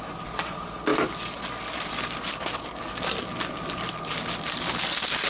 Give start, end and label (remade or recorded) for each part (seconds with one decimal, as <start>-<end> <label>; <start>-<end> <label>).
0.0-5.3 recorded